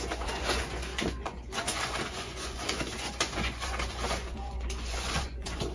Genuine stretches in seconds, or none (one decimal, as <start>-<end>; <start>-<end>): none